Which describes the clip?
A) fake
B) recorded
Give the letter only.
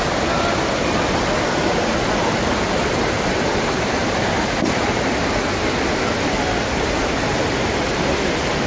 B